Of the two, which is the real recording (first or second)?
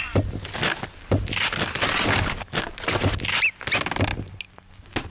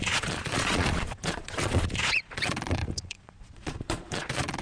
first